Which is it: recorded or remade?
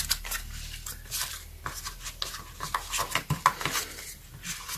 recorded